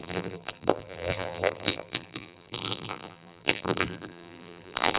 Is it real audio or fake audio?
fake